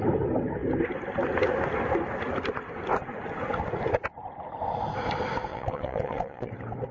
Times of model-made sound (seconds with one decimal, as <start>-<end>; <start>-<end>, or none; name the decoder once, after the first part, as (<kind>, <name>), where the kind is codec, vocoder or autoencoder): 5.5-6.5 (vocoder, WaveNeXt)